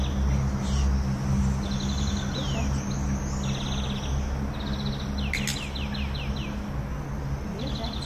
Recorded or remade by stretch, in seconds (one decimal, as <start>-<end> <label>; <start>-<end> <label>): 0.0-8.1 recorded